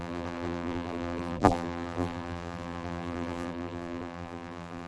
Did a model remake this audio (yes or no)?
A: yes